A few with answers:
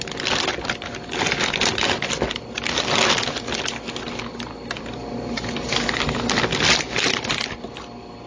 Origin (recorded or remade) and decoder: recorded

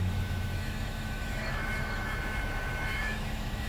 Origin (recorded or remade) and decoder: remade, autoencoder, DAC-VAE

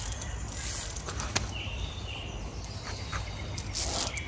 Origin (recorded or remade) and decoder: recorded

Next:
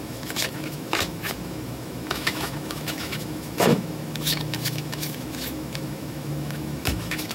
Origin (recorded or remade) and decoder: remade, autoencoder, DAC-VAE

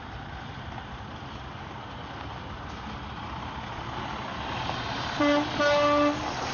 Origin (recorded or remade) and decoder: recorded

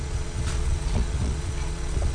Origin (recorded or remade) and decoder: remade, vocoder, Vocos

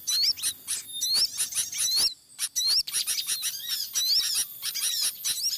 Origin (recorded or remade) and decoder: recorded